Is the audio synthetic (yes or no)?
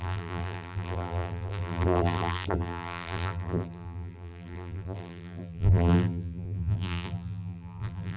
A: yes